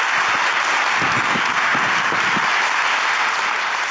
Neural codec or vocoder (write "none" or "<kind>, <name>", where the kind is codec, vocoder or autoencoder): none